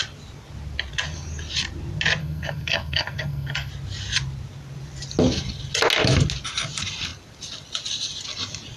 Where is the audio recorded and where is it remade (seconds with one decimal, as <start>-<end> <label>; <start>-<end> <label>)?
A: 0.0-2.2 recorded; 2.2-3.7 remade; 3.7-8.8 recorded